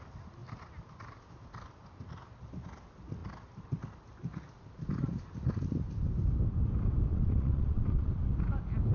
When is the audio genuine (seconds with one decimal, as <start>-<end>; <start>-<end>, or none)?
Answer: 0.0-7.1; 8.2-8.9